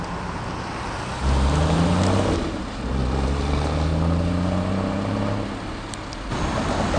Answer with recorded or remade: recorded